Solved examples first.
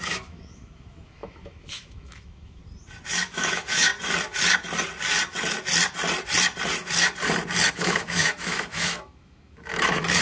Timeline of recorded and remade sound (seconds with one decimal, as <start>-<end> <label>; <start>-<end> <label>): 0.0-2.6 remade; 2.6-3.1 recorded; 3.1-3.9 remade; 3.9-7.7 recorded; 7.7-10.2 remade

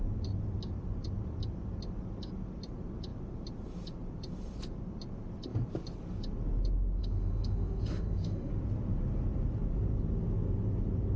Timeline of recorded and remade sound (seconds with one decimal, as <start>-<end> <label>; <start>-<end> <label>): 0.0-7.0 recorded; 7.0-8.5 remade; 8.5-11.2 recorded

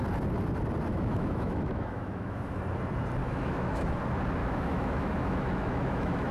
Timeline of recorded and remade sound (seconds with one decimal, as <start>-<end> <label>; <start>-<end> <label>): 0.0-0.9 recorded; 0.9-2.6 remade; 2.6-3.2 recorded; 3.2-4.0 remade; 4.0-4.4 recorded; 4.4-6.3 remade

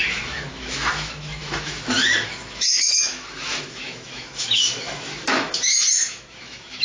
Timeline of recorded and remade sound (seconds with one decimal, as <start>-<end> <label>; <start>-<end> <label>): 0.0-6.8 remade

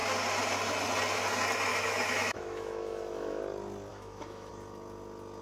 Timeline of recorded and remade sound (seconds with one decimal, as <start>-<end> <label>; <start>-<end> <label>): 0.0-1.7 recorded; 1.7-3.4 remade; 3.4-3.9 recorded; 3.9-4.5 remade; 4.5-5.4 recorded

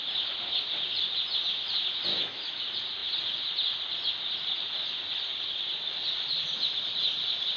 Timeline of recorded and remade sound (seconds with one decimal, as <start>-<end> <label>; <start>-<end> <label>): 0.0-2.1 recorded; 2.1-2.6 remade; 2.6-7.6 recorded

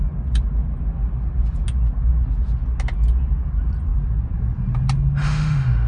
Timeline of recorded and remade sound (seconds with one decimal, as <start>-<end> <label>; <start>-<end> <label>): 0.0-5.2 recorded; 5.2-5.9 remade

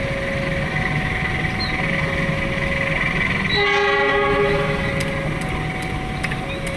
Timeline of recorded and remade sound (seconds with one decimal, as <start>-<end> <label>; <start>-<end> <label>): 0.0-4.1 recorded; 4.1-4.9 remade; 4.9-6.8 recorded